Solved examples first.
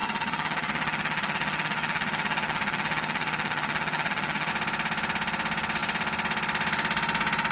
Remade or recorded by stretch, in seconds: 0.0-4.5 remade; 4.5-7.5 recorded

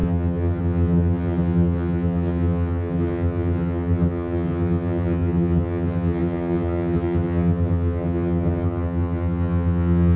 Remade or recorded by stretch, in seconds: 0.0-10.2 remade

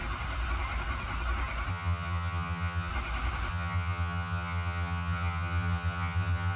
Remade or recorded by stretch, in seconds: 0.0-1.7 recorded; 1.7-2.9 remade; 2.9-3.5 recorded; 3.5-6.6 remade

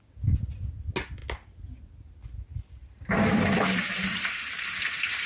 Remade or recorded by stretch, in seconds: 0.0-5.3 recorded

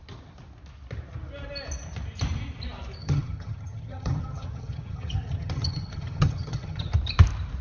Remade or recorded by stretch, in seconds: 0.0-3.0 recorded; 3.0-6.9 remade; 6.9-7.6 recorded

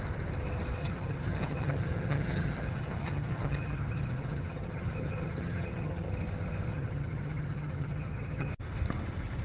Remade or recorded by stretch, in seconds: 0.0-0.8 recorded; 0.8-6.1 remade; 6.1-6.7 recorded; 6.7-8.5 remade; 8.5-9.4 recorded

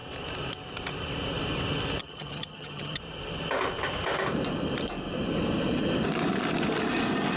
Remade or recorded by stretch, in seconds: 0.0-2.0 recorded; 2.0-3.0 remade; 3.0-7.4 recorded